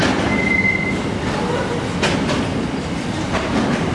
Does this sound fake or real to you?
real